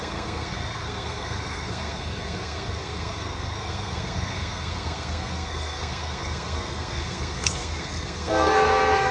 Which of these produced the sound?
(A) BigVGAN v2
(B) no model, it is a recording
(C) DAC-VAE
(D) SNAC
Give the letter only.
D